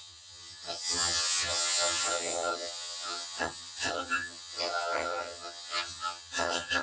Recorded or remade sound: remade